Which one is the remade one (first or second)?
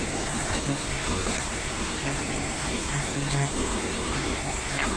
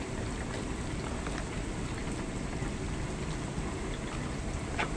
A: first